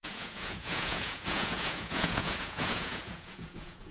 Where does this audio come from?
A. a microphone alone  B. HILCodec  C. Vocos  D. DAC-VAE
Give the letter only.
C